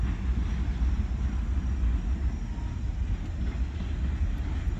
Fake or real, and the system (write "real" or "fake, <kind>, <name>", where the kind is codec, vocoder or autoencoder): real